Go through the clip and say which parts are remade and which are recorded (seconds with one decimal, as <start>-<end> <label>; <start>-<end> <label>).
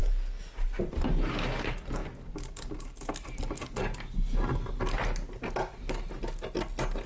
0.0-7.1 recorded